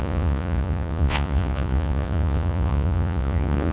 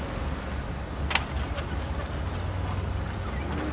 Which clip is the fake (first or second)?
first